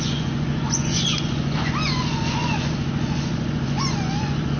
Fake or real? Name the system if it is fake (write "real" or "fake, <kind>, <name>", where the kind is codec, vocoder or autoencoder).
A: fake, vocoder, Vocos